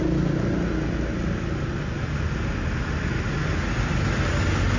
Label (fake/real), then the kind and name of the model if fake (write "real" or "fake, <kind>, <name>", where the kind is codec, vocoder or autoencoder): real